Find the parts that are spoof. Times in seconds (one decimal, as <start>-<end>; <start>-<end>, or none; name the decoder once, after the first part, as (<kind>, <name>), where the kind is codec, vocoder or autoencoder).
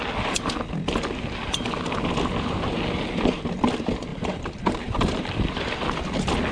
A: 4.1-5.3 (vocoder, BigVGAN v2)